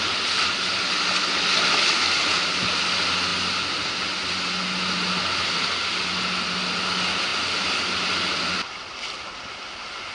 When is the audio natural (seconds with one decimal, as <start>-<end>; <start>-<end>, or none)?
0.0-10.1

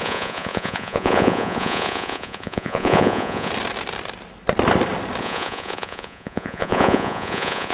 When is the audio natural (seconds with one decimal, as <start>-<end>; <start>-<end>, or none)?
3.5-5.2

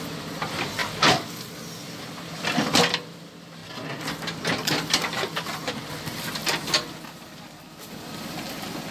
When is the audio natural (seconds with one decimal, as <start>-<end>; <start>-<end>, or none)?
0.8-2.0; 3.6-5.9; 6.4-7.7

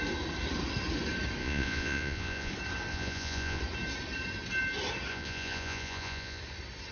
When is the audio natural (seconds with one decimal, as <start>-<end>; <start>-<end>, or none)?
0.0-1.4; 2.5-2.9; 3.6-5.1; 6.4-6.9

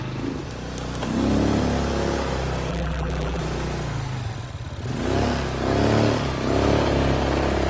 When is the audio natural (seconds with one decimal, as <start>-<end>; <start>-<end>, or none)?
0.0-2.7; 3.4-7.7